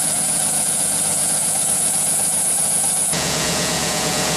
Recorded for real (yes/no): no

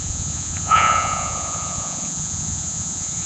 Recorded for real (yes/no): no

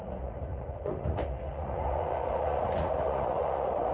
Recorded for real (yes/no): no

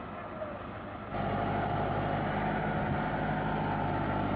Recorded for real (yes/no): yes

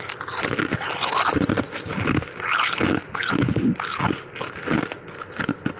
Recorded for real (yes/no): yes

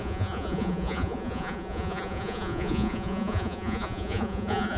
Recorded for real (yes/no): no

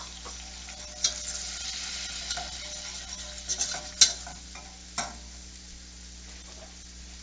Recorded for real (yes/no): yes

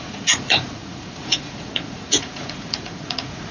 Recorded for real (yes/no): no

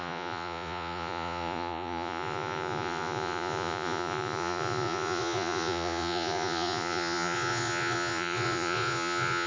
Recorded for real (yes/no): no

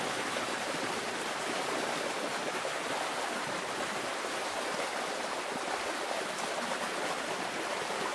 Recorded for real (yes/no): yes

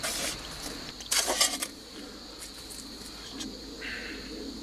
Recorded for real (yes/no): yes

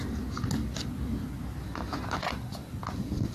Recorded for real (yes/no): yes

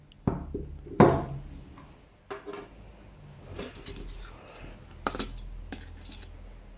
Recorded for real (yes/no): yes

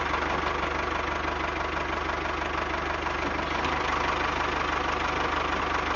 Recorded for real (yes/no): yes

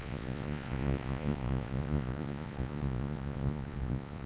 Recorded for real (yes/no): no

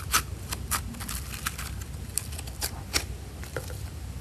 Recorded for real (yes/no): yes